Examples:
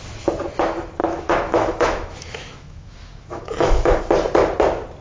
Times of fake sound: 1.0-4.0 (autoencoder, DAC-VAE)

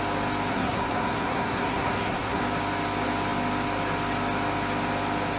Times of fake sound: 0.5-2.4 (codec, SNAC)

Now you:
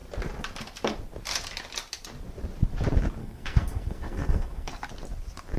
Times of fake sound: 3.2-4.7 (codec, SNAC)